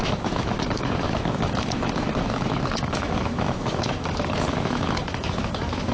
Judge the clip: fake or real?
fake